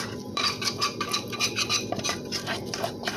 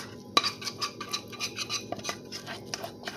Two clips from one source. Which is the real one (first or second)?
second